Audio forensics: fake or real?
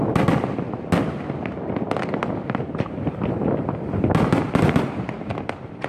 real